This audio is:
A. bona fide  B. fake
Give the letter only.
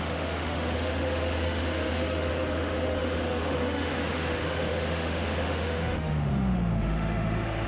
B